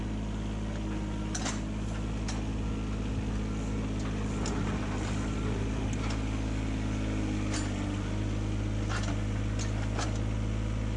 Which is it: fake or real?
real